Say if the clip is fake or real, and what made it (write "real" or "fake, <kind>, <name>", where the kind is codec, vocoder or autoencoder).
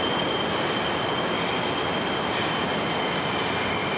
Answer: real